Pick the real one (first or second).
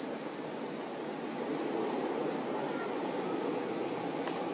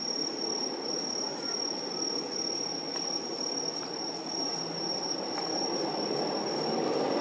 first